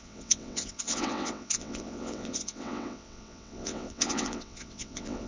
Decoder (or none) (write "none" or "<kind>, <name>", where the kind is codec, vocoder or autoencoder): vocoder, WaveNeXt